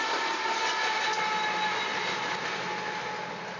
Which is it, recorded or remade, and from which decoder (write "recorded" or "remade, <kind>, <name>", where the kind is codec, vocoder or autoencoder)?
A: recorded